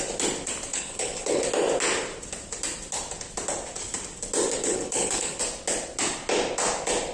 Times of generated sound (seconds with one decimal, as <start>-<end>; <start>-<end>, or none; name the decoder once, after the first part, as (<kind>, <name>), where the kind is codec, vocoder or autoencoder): 0.7-1.4 (codec, HILCodec); 4.6-5.4